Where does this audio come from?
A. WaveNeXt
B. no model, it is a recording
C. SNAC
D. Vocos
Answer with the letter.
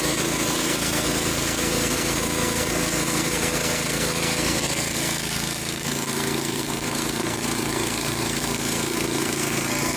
C